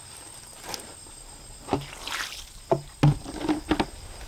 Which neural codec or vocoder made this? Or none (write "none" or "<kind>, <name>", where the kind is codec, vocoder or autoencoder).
none